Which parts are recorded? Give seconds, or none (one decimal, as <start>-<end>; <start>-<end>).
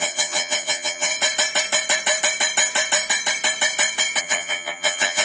1.1-4.2